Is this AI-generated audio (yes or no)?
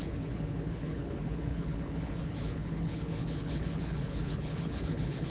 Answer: yes